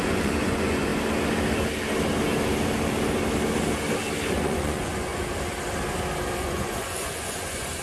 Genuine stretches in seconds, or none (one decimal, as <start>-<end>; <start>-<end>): 0.9-4.3; 5.1-6.4